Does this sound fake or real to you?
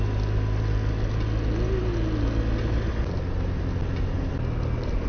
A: real